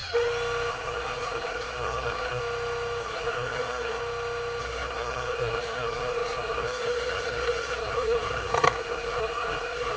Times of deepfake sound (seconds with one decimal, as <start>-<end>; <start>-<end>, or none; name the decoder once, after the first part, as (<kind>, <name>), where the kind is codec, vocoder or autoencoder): 0.7-2.4 (codec, SNAC); 3.0-4.0; 4.6-10.0